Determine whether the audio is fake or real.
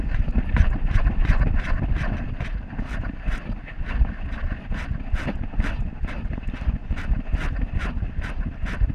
real